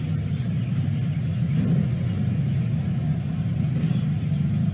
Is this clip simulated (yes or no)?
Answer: yes